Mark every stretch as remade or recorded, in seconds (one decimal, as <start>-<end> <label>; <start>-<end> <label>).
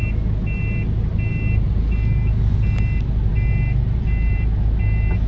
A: 0.0-5.3 recorded